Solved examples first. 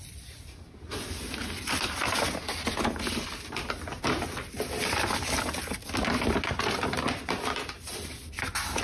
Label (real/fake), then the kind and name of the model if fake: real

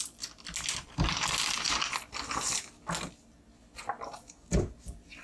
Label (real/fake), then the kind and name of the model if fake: real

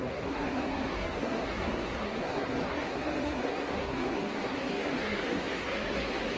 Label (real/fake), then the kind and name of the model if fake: fake, codec, SNAC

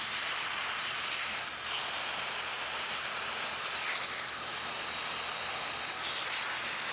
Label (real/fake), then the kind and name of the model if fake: real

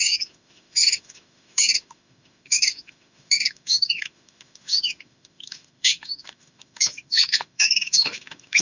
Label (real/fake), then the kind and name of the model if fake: fake, autoencoder, DAC-VAE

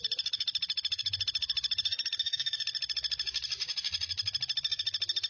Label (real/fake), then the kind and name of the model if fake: real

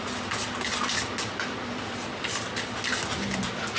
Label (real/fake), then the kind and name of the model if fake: real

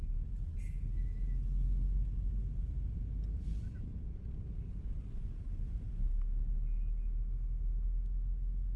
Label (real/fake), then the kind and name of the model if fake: real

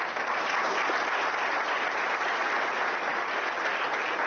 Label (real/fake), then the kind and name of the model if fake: real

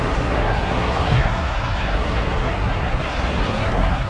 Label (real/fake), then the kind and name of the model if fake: fake, codec, SNAC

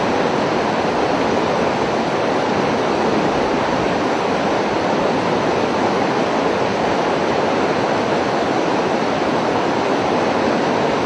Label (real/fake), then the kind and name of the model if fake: real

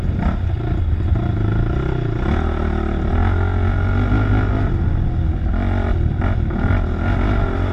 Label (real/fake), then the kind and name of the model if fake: real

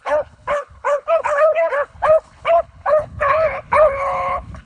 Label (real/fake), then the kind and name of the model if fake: fake, codec, HILCodec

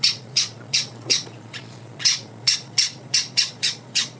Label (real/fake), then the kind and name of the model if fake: fake, vocoder, Vocos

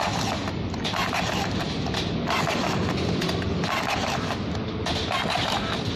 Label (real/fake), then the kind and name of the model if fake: real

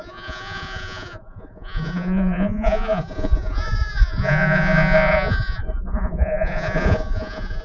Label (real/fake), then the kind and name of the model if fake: fake, vocoder, Vocos